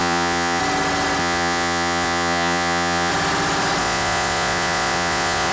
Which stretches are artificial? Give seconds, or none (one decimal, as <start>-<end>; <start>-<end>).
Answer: 0.0-0.6; 1.2-3.1; 3.8-5.5